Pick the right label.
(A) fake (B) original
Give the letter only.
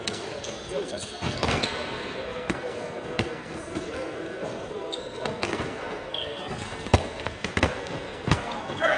A